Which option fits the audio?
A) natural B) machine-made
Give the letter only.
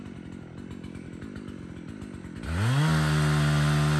A